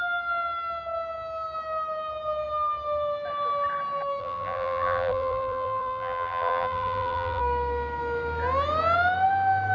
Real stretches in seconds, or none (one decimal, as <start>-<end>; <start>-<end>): 0.0-4.2; 7.4-9.7

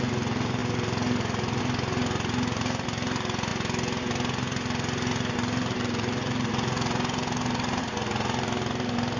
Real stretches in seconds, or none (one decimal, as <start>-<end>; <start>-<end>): 0.0-9.2

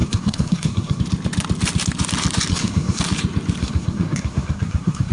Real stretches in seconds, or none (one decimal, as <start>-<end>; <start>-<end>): 1.0-2.5; 3.0-3.6

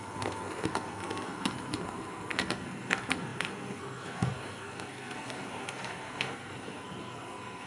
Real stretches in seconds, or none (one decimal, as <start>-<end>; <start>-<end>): none

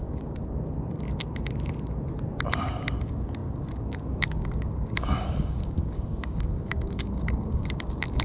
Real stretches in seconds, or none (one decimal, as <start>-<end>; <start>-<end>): 0.4-3.0

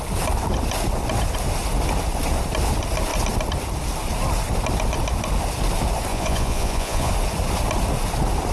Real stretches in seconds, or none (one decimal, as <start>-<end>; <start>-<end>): 0.0-6.1; 7.1-8.5